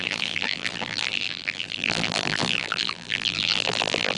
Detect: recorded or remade remade